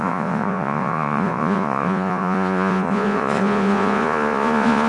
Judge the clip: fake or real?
fake